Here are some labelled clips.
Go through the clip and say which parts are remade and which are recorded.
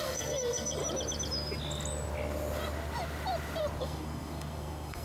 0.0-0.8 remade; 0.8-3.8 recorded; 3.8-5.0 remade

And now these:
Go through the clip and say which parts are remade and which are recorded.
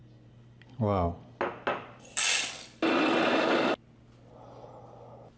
0.0-5.4 recorded